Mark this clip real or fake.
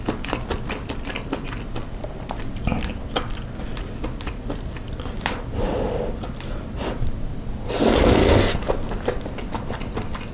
real